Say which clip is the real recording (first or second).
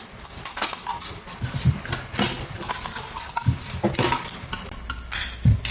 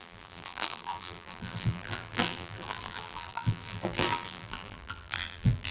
first